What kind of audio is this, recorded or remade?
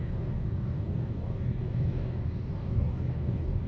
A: remade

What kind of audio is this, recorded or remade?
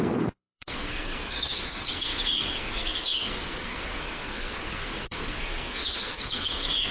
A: remade